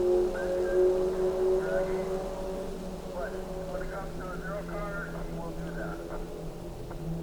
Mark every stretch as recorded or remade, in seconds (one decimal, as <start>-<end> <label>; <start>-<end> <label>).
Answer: 0.0-7.2 recorded